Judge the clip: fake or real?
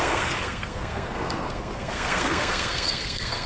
fake